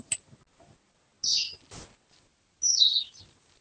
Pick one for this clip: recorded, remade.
recorded